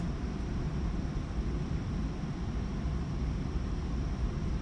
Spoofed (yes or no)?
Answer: yes